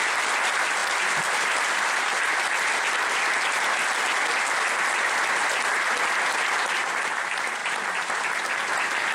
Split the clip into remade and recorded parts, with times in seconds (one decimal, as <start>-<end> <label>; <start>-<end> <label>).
0.0-7.6 recorded; 7.6-8.5 remade; 8.5-9.1 recorded